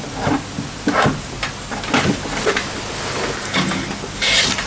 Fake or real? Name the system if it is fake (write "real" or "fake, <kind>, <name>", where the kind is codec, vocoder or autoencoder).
real